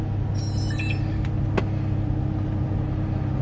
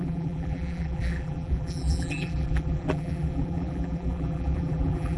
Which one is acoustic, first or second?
first